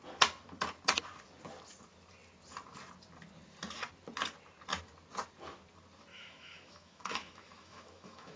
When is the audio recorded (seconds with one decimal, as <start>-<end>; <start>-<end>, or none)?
0.0-6.1